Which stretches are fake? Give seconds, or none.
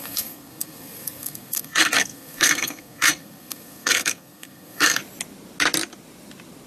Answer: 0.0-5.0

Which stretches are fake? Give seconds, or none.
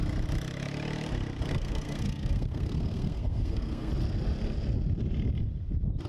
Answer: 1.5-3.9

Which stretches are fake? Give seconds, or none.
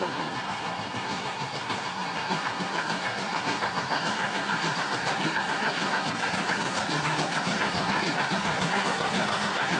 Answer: 0.0-9.8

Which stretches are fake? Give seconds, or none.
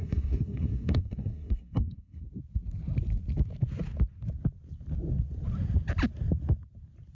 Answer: 0.0-2.2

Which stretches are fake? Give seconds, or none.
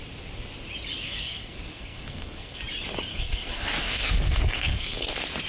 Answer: 1.0-2.6; 3.1-5.0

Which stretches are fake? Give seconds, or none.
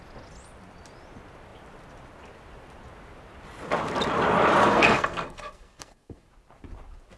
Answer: 4.6-6.3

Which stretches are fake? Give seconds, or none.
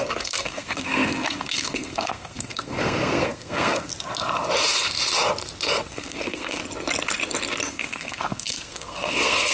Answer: 0.0-3.9; 5.9-6.6; 7.7-9.5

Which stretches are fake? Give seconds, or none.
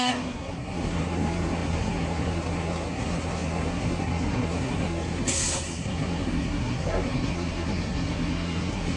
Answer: 0.0-9.0